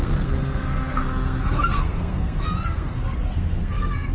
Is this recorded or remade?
remade